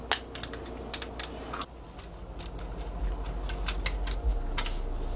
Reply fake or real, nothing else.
real